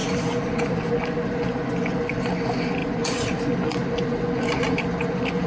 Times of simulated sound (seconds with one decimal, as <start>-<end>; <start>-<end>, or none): 0.0-0.9; 2.8-3.4